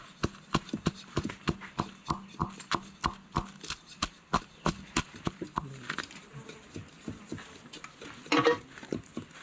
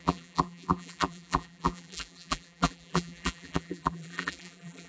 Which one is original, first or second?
first